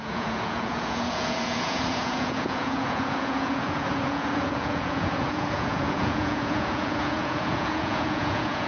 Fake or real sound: fake